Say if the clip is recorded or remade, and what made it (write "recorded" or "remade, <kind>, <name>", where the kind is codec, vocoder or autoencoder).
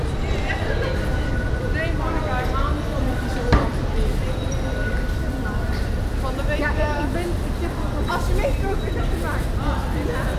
recorded